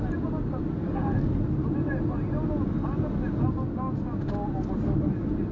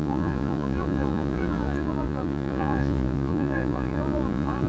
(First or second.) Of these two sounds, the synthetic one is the second